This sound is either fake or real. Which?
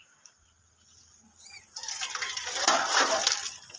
real